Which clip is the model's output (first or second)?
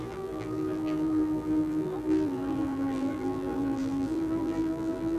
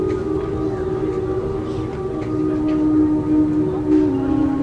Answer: first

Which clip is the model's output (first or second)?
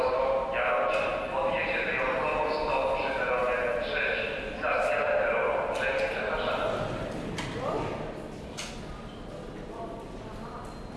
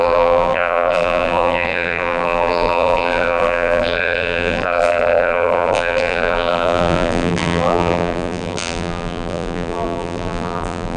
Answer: second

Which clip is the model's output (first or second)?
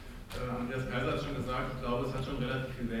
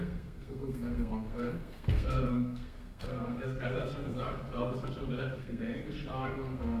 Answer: second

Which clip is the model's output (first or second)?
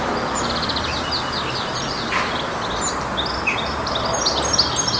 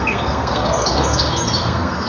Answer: second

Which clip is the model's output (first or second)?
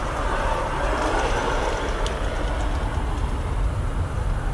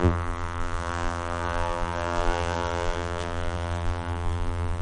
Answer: second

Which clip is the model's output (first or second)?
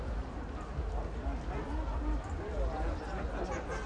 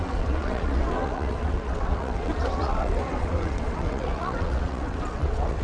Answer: second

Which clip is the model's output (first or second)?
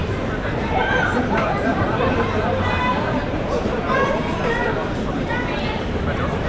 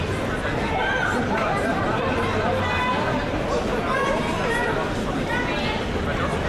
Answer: first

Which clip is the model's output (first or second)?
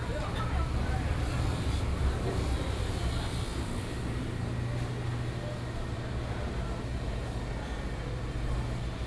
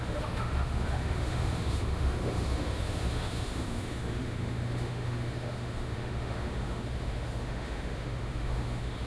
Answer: second